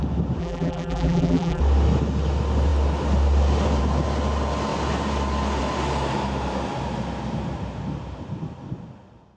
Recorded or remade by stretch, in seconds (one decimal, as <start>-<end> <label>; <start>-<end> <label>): 0.0-0.4 recorded; 0.4-1.6 remade; 1.6-9.4 recorded